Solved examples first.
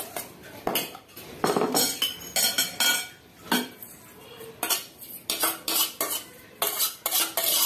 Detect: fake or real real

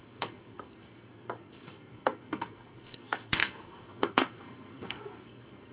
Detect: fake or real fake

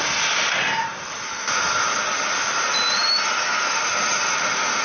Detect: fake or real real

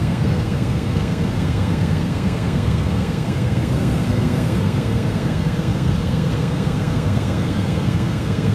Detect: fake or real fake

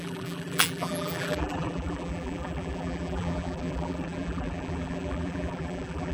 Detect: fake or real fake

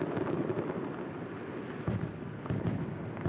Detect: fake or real real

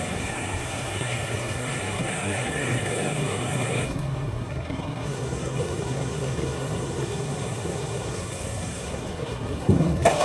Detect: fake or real fake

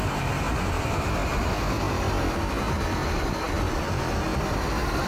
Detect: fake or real real